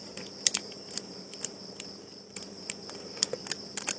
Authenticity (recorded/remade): remade